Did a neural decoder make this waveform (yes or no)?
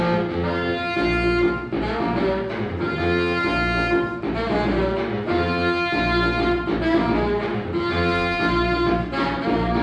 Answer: no